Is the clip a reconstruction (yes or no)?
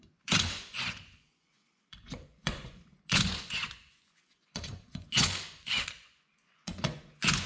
yes